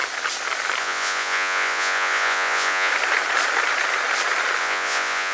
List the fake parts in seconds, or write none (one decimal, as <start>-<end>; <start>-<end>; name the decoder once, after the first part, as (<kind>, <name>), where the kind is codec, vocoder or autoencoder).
0.8-2.9 (vocoder, Vocos); 4.6-5.3